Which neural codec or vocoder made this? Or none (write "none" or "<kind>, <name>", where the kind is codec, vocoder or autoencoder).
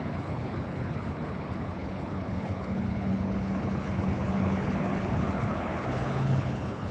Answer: codec, HILCodec